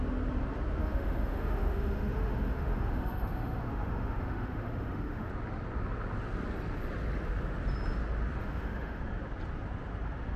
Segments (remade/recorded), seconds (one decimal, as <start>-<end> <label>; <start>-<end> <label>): 0.0-0.8 recorded; 0.8-5.3 remade; 5.3-8.4 recorded; 8.4-9.0 remade; 9.0-10.4 recorded